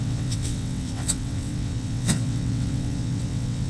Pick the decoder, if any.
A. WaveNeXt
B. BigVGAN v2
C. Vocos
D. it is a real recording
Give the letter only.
A